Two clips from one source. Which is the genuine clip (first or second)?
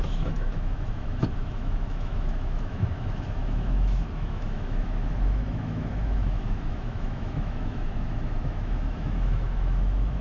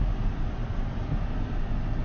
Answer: second